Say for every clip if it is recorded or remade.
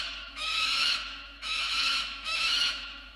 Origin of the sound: remade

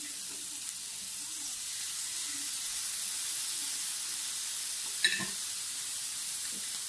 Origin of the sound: recorded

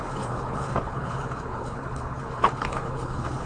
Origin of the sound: remade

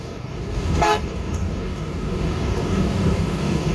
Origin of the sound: remade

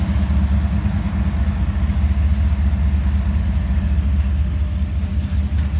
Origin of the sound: recorded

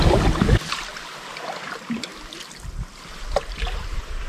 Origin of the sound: recorded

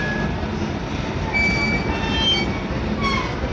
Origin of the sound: recorded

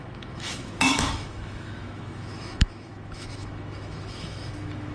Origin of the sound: remade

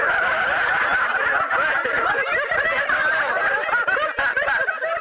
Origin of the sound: recorded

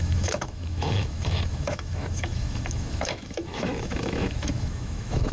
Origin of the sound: remade